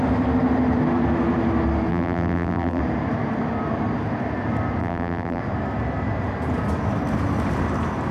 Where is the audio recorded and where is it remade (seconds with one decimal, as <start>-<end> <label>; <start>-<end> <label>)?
0.0-1.9 recorded; 1.9-2.8 remade; 2.8-4.8 recorded; 4.8-5.4 remade; 5.4-8.1 recorded